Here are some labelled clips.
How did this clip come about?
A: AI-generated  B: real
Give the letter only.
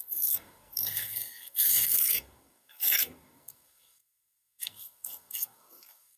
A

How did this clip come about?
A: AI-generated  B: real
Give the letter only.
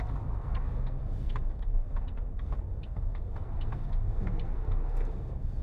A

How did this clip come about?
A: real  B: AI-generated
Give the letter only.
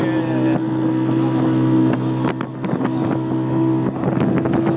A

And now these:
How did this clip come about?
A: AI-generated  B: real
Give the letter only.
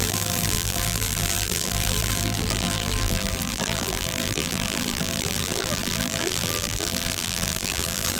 A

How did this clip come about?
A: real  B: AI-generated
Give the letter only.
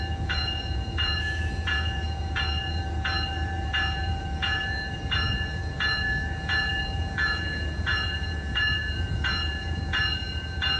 B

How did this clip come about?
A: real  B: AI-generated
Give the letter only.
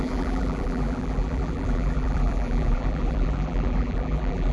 B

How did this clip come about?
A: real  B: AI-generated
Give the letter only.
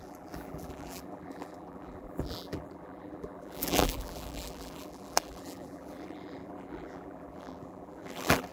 B